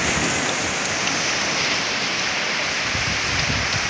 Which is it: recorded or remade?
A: recorded